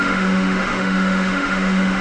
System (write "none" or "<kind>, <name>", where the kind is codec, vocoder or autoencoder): autoencoder, DAC-VAE